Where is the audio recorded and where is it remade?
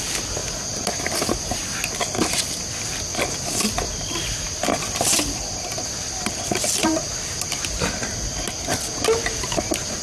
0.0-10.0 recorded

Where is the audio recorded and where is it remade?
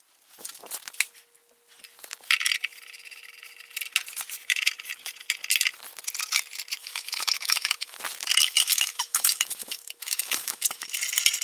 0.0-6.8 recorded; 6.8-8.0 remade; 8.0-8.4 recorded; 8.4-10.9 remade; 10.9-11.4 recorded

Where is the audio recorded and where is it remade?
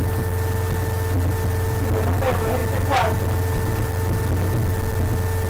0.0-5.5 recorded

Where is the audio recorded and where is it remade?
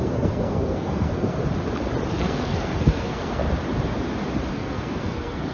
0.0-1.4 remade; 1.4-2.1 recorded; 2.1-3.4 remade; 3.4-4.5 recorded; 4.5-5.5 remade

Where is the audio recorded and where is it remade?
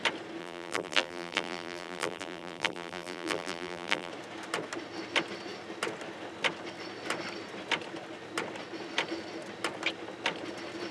0.0-0.4 recorded; 0.4-4.1 remade; 4.1-10.9 recorded